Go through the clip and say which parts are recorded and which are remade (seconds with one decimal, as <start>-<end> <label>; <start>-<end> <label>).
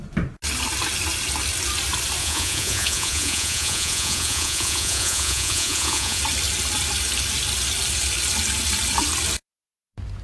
0.0-2.2 recorded; 2.2-6.2 remade; 6.2-10.2 recorded